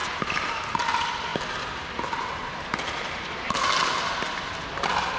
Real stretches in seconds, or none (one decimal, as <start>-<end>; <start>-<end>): 0.0-5.2